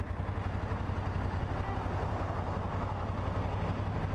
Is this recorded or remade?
recorded